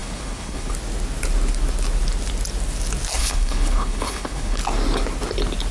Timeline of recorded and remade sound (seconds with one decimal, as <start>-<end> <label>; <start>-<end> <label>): 0.0-0.7 remade; 0.7-3.2 recorded; 3.2-4.6 remade; 4.6-5.7 recorded